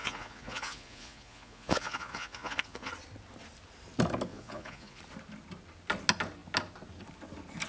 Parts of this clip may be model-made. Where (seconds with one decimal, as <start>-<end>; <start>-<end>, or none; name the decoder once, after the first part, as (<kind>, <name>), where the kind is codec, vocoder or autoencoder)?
0.0-2.9 (vocoder, Vocos); 4.3-5.0